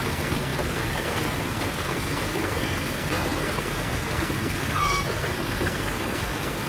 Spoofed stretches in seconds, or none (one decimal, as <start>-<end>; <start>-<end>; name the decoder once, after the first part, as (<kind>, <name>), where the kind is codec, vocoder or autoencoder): 0.0-6.7 (codec, SNAC)